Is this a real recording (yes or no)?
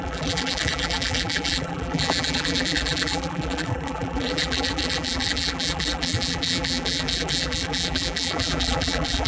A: no